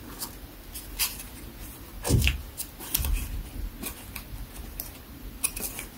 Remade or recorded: recorded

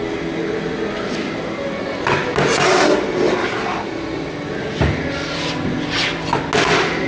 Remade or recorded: recorded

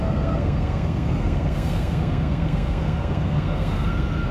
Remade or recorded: remade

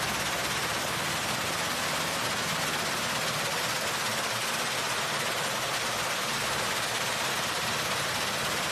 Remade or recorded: recorded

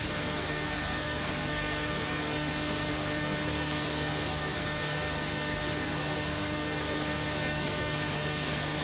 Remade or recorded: remade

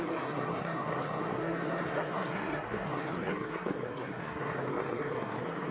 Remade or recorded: remade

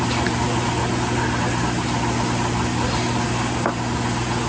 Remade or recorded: recorded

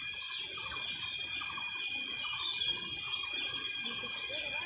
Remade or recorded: recorded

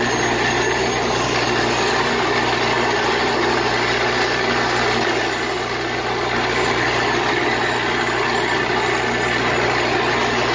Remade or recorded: recorded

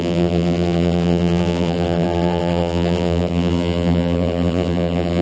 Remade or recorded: remade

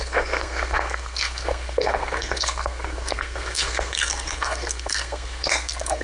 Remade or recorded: remade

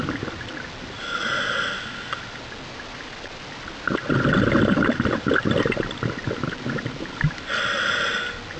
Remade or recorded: recorded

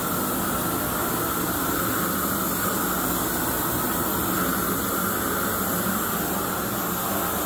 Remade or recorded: recorded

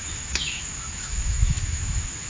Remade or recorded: remade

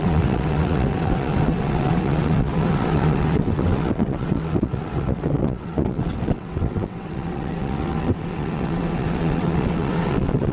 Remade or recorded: remade